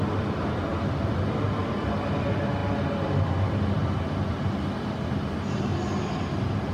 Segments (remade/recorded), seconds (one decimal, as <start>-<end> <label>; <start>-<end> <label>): 0.0-6.7 recorded